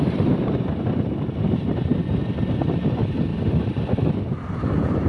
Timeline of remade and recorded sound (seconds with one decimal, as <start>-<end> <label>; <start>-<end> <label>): 0.0-1.9 remade; 1.9-2.6 recorded; 2.6-3.3 remade; 3.3-4.5 recorded; 4.5-5.1 remade